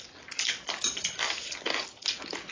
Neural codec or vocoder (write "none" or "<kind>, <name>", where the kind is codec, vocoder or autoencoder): none